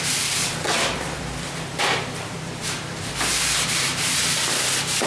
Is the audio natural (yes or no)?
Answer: no